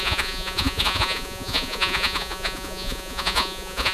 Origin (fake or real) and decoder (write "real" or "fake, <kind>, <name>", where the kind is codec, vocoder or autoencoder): fake, vocoder, Vocos